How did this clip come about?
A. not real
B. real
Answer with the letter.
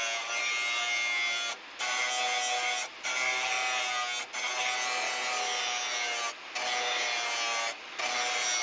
B